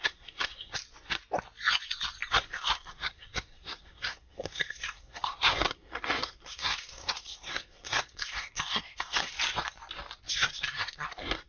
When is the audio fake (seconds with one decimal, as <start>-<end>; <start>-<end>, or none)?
0.0-0.8; 2.3-9.3; 10.3-11.5